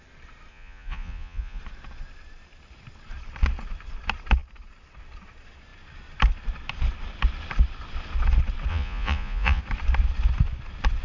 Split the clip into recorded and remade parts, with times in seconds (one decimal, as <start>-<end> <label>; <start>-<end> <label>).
0.0-0.5 recorded; 0.5-1.6 remade; 1.6-8.7 recorded; 8.7-9.6 remade; 9.6-11.0 recorded